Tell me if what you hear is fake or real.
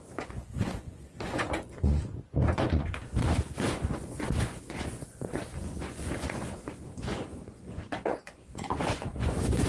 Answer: fake